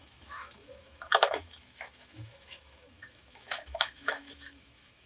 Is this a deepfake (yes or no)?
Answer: yes